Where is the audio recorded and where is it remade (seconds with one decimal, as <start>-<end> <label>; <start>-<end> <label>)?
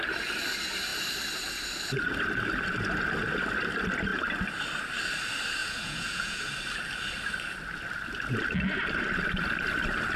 0.0-5.6 recorded; 5.6-6.5 remade; 6.5-10.2 recorded